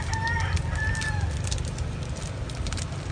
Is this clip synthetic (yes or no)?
no